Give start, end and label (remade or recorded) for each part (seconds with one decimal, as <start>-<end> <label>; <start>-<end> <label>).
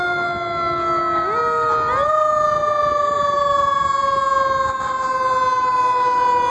0.0-6.5 recorded